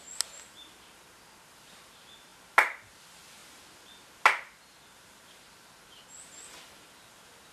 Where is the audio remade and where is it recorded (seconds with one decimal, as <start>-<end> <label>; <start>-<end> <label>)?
0.0-7.5 recorded